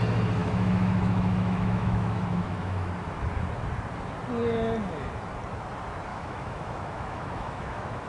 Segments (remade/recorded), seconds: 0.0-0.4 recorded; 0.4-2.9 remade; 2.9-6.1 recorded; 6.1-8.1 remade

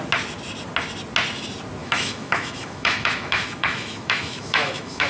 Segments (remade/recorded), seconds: 0.0-1.8 recorded; 1.8-5.1 remade

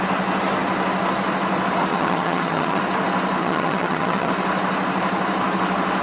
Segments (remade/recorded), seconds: 0.0-1.9 recorded; 1.9-2.8 remade; 2.8-3.4 recorded; 3.4-4.3 remade; 4.3-6.0 recorded

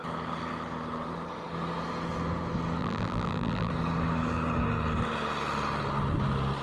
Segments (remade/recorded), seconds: 0.0-2.8 recorded; 2.8-3.7 remade; 3.7-6.6 recorded

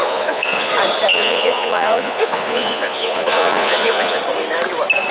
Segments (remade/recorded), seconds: 0.0-0.7 remade; 0.7-1.1 recorded; 1.1-4.2 remade; 4.2-5.1 recorded

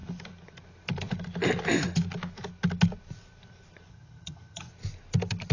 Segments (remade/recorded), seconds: 0.0-3.9 recorded; 3.9-4.7 remade; 4.7-5.5 recorded

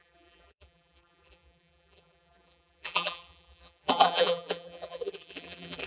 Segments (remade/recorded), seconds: 0.0-5.9 remade

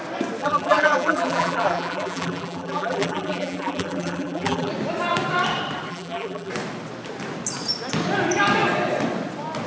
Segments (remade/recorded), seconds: 0.0-0.4 recorded; 0.4-4.7 remade; 4.7-5.9 recorded; 5.9-6.5 remade; 6.5-9.7 recorded